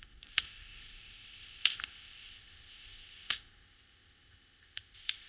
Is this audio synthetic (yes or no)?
yes